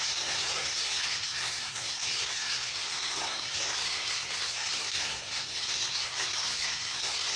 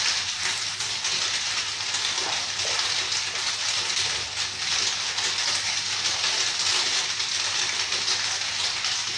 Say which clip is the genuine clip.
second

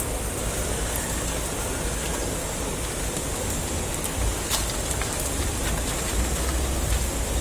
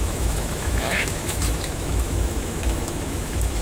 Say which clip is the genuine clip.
first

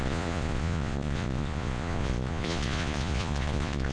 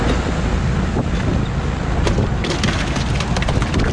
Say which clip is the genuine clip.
second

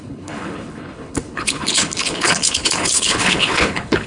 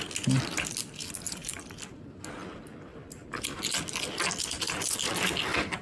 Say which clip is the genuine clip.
second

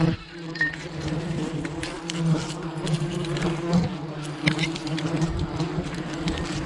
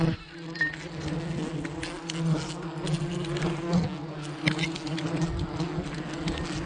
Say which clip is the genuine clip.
second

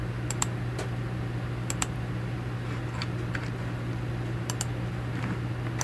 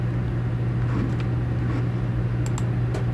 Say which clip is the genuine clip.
second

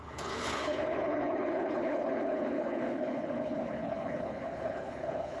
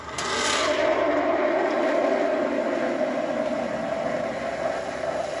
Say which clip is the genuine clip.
second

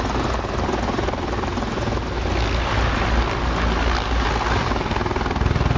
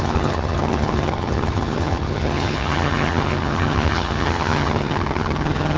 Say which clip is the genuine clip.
first